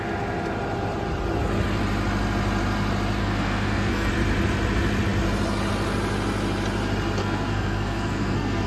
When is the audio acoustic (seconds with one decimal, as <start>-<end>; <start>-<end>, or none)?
0.0-3.2; 4.1-7.2